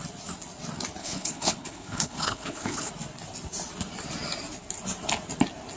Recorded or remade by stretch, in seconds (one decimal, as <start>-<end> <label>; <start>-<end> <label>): 0.0-1.0 recorded; 1.0-2.9 remade; 2.9-5.8 recorded